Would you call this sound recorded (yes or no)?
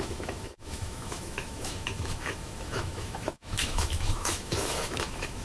no